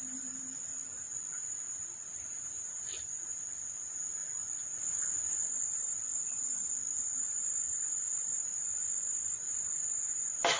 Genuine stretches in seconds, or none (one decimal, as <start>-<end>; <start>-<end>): 0.0-10.6